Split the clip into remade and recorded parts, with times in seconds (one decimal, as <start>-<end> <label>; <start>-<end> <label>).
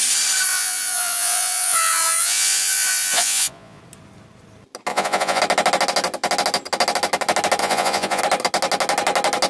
0.0-0.5 recorded; 0.5-3.8 remade; 3.8-4.9 recorded; 4.9-5.4 remade; 5.4-7.6 recorded; 7.6-8.2 remade; 8.2-9.5 recorded